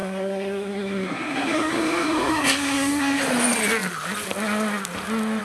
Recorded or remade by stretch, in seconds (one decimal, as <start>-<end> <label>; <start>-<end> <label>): 0.0-3.2 remade; 3.2-5.4 recorded